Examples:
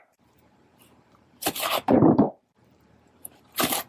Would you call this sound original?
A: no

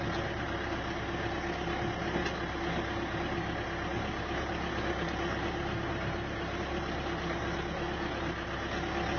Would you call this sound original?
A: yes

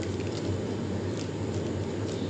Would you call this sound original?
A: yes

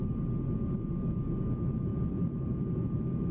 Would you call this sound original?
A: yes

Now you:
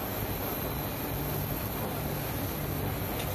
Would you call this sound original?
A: yes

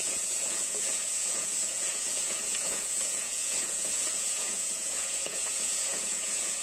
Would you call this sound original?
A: no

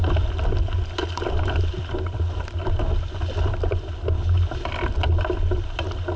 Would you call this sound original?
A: yes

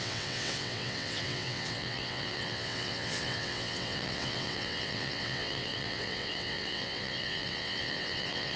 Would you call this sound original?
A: no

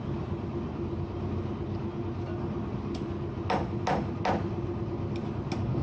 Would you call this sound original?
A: yes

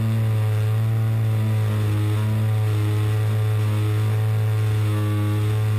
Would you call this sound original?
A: yes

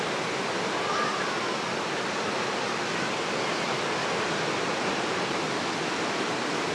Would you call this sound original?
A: yes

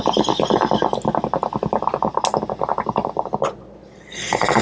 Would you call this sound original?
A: yes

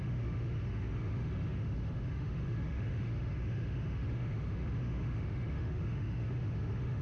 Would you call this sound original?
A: no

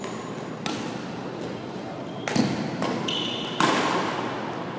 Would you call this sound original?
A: yes